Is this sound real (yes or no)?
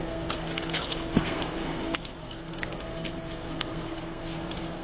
no